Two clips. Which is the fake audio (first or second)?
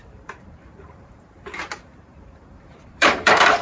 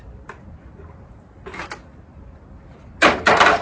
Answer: first